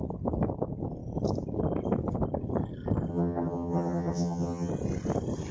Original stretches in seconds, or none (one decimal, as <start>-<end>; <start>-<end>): 0.0-3.1; 4.7-5.5